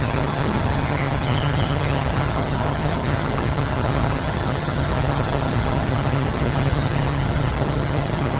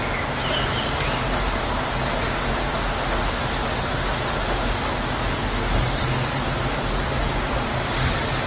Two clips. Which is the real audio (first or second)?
second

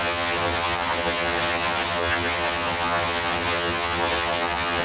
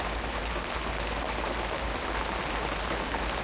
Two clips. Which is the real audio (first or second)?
second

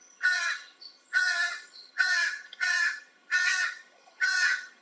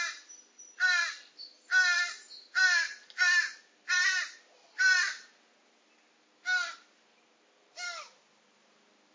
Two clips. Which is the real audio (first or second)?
second